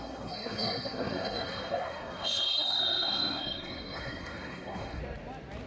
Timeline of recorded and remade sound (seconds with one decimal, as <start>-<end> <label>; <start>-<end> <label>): 0.0-5.0 remade; 5.0-5.7 recorded